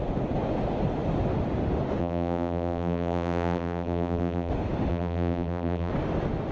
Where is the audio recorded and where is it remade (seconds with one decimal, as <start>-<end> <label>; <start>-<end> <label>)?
0.0-2.0 recorded; 2.0-4.5 remade; 4.5-4.9 recorded; 4.9-5.9 remade; 5.9-6.5 recorded